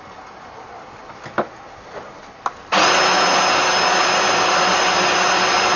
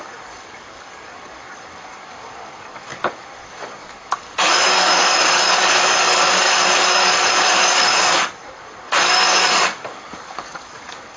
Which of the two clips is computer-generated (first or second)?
second